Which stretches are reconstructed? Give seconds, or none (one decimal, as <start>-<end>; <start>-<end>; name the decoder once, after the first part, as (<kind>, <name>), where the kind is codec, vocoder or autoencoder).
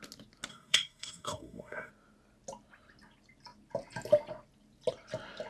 0.5-1.9 (codec, SNAC)